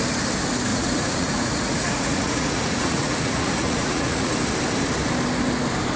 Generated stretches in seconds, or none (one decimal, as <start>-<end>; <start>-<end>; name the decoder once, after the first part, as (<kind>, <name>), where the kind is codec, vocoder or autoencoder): 0.7-4.3 (vocoder, Vocos)